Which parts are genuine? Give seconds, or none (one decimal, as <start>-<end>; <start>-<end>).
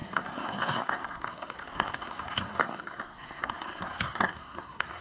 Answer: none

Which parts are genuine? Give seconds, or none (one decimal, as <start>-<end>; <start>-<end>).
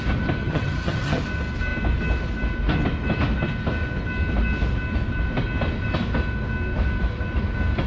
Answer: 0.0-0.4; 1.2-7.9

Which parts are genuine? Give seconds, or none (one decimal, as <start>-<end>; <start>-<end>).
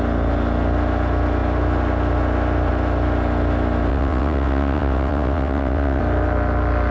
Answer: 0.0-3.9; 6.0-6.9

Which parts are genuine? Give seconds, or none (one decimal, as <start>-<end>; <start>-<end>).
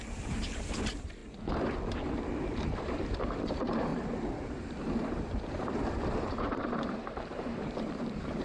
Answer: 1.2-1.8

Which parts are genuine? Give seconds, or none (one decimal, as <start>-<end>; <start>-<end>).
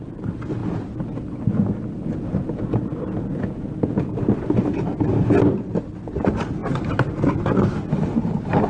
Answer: 0.0-8.7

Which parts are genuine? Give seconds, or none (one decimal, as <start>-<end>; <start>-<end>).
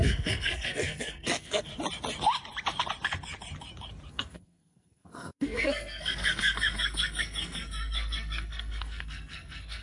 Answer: 1.7-4.1